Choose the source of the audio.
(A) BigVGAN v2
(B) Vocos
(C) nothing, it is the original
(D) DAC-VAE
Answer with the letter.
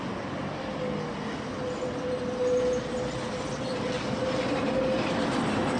C